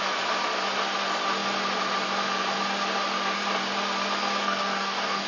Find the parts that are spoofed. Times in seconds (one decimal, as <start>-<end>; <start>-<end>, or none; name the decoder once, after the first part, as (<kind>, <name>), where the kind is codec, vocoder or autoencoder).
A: 4.4-5.3 (codec, DAC)